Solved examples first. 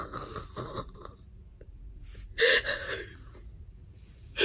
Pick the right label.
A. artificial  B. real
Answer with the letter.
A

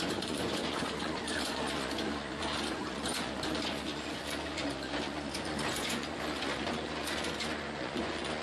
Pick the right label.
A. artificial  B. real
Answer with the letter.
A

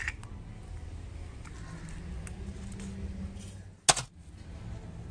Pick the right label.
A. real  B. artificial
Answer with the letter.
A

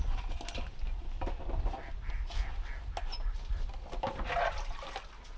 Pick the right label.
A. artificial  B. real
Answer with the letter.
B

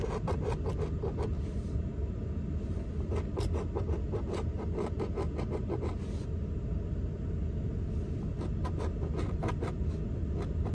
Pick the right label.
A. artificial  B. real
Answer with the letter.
B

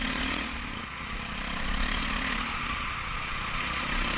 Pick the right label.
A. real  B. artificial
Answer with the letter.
B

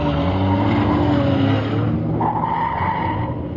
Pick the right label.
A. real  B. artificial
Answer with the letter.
A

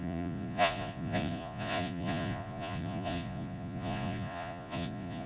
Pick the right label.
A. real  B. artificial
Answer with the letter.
B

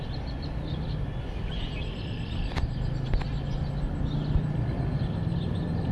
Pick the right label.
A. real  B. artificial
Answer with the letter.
A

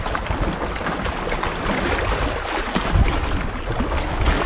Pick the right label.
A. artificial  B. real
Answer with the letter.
B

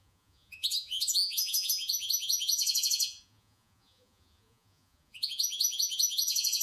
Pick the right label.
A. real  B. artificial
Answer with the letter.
B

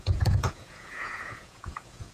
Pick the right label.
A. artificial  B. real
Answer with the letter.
A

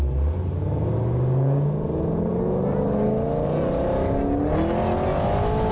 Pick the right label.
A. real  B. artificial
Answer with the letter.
A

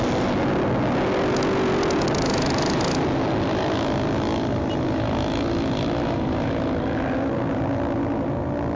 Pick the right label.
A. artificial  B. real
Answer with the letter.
B